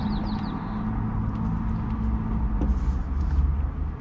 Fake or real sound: real